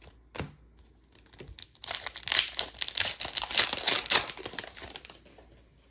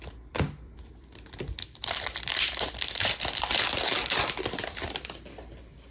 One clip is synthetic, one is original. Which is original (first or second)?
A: first